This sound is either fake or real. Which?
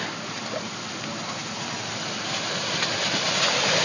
real